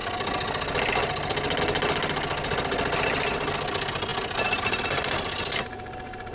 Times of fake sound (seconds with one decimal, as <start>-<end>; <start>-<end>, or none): none